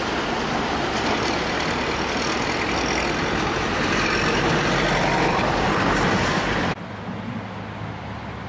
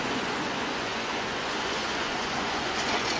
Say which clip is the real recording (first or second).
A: first